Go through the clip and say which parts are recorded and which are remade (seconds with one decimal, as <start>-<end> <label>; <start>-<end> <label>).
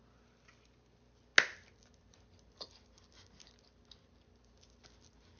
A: 0.0-5.4 recorded